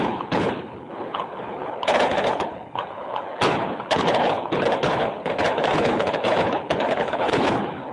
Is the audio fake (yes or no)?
yes